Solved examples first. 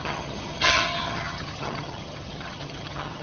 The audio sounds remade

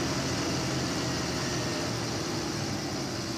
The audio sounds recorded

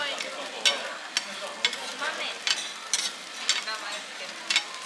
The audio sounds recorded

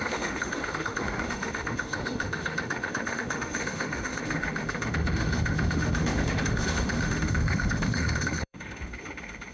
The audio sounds remade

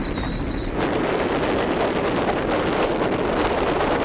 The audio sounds recorded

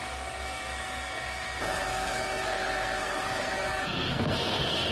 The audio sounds remade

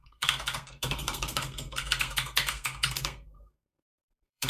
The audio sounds remade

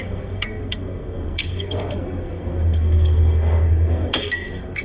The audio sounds remade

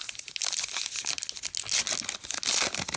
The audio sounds recorded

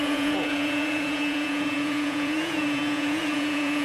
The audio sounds remade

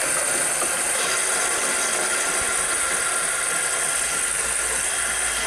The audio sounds recorded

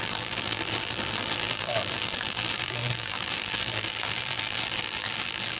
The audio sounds remade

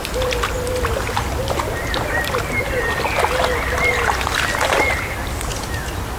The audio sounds recorded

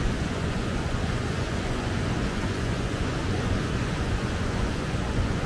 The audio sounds remade